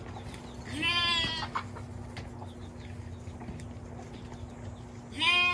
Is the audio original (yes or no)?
yes